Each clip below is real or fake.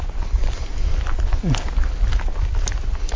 real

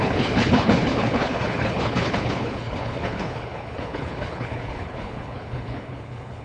fake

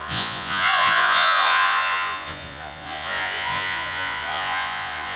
fake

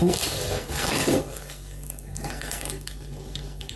fake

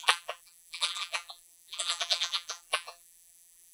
fake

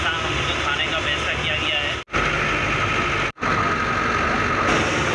real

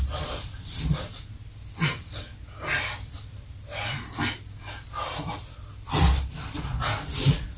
fake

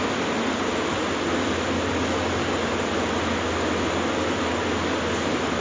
real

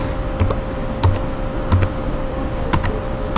real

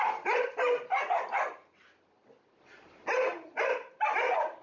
real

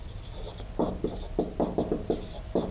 real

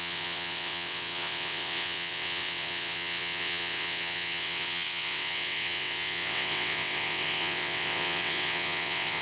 fake